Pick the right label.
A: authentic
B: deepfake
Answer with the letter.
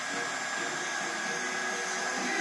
A